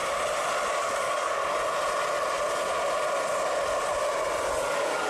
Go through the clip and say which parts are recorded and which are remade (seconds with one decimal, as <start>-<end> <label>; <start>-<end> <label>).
0.0-0.7 recorded; 0.7-1.4 remade; 1.4-4.5 recorded; 4.5-5.1 remade